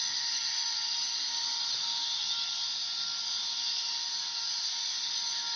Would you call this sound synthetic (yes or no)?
no